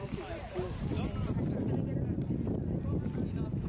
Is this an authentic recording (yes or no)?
yes